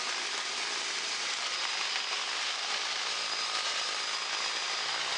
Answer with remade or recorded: recorded